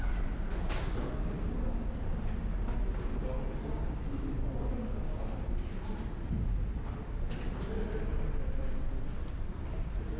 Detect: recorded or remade recorded